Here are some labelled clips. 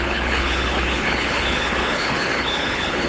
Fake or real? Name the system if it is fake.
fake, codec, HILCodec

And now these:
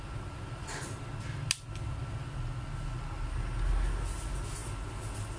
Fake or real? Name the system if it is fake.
real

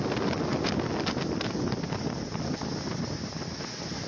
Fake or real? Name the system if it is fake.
real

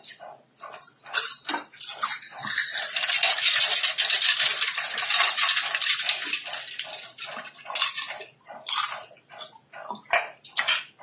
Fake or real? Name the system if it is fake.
real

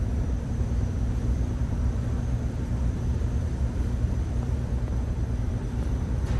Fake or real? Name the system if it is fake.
fake, vocoder, BigVGAN v2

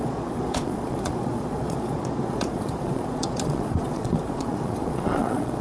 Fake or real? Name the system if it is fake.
fake, vocoder, Vocos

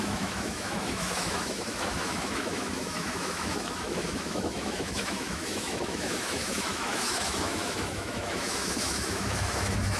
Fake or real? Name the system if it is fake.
fake, autoencoder, DAC-VAE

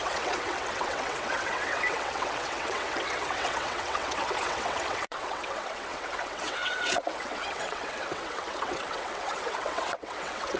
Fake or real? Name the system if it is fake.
fake, vocoder, WaveNeXt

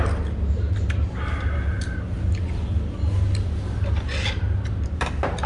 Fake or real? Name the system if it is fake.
real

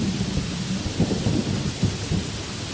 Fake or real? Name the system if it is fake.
real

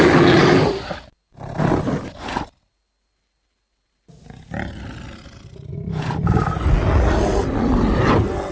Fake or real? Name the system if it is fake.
real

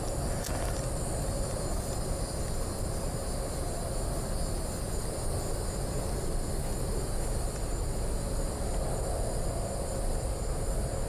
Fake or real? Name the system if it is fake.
real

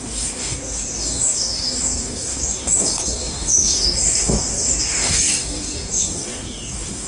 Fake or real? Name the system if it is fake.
fake, codec, DAC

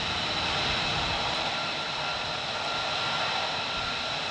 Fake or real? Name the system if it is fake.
real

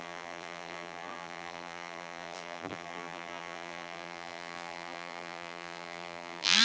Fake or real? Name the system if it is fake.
fake, vocoder, BigVGAN v2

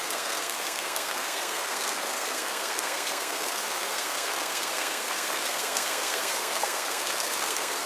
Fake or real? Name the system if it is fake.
fake, codec, SNAC